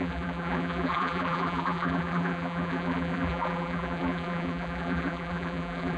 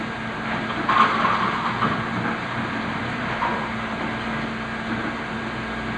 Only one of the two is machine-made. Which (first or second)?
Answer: first